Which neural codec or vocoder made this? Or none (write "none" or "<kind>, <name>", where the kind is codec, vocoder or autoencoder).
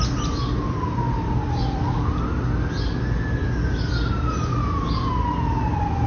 none